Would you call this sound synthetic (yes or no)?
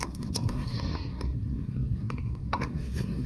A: yes